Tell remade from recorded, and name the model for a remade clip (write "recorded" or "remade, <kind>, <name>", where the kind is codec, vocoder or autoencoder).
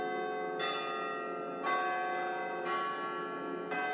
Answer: recorded